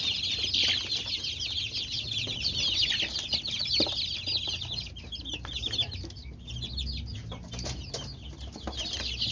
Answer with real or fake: real